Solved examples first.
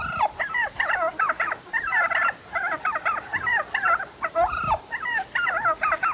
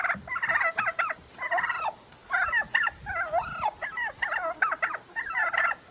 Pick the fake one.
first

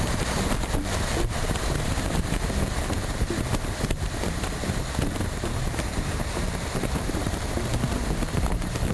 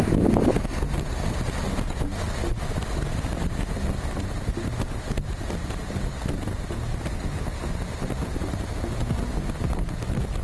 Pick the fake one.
first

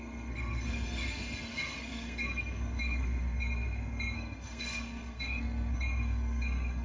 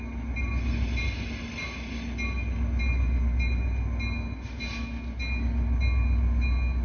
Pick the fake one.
first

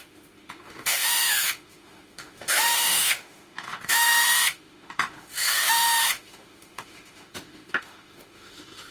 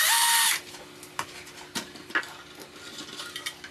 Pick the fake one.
first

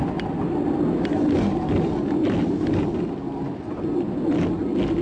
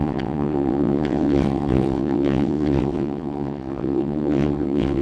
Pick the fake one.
second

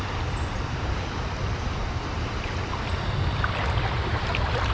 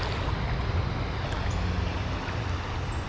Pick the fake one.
first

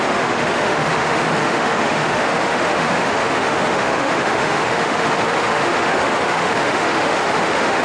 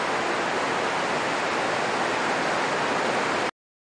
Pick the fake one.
first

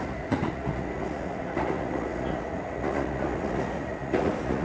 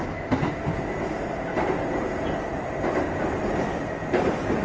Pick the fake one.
first